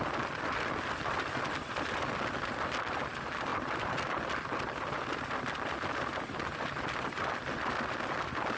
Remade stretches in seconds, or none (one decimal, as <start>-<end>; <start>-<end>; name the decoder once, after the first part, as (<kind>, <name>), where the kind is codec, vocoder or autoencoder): 3.5-4.3 (vocoder, BigVGAN v2); 6.1-7.2